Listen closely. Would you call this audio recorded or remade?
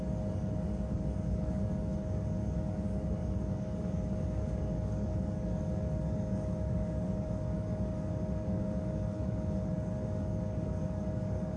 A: remade